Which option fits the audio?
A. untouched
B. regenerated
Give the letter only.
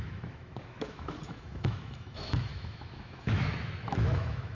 B